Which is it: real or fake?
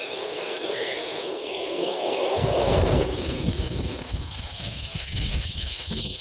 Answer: fake